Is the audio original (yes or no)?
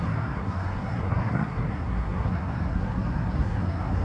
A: no